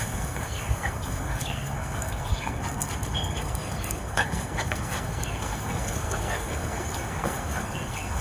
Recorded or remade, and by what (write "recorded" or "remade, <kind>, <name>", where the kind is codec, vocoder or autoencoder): remade, codec, SNAC